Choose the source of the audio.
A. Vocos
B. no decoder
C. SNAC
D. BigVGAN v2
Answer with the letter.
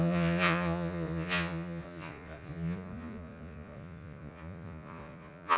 A